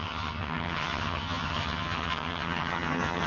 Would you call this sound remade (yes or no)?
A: yes